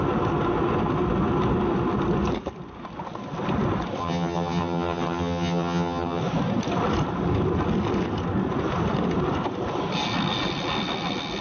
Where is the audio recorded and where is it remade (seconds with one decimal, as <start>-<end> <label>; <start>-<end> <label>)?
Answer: 0.0-4.0 recorded; 4.0-6.2 remade; 6.2-11.4 recorded